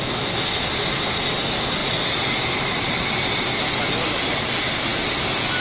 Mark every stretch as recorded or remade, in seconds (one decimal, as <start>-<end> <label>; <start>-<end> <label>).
0.0-1.8 recorded; 1.8-3.2 remade; 3.2-4.9 recorded; 4.9-5.6 remade